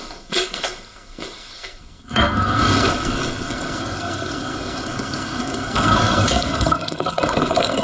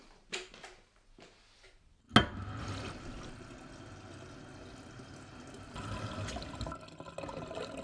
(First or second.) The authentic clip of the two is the second